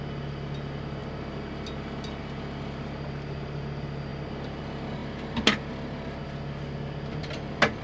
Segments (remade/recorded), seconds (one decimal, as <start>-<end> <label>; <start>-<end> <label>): 0.0-7.8 recorded